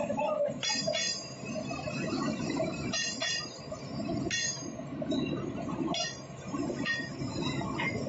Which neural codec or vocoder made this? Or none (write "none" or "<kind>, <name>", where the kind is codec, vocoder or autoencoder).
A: none